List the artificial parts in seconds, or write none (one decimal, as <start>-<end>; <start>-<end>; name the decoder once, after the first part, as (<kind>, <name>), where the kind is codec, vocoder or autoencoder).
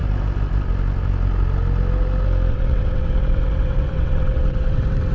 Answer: 2.5-5.1 (vocoder, WaveNeXt)